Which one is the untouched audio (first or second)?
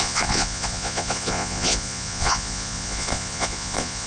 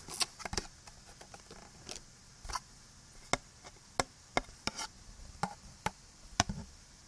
second